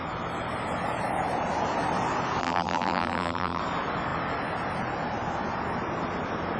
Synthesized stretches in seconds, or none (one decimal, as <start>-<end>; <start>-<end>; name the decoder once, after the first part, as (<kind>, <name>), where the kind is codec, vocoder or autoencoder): 2.4-3.6 (vocoder, BigVGAN v2)